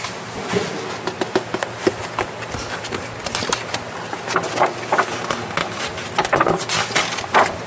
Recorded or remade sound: recorded